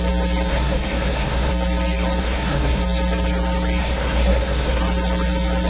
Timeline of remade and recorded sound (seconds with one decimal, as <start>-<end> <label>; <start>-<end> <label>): 0.0-0.5 recorded; 0.5-1.5 remade; 1.5-2.2 recorded; 2.2-2.8 remade; 2.8-3.8 recorded; 3.8-4.8 remade; 4.8-5.7 recorded